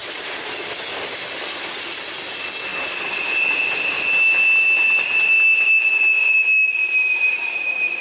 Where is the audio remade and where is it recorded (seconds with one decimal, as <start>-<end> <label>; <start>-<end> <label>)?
0.0-0.5 remade; 0.5-6.8 recorded; 6.8-8.0 remade

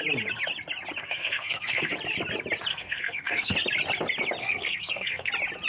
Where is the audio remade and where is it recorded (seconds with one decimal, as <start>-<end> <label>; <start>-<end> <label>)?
0.0-1.0 recorded; 1.0-1.9 remade; 1.9-2.7 recorded; 2.7-3.5 remade; 3.5-4.4 recorded; 4.4-5.3 remade; 5.3-5.7 recorded